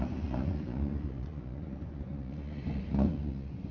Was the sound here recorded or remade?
remade